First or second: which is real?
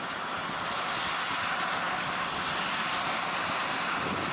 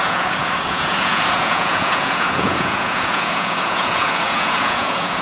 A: first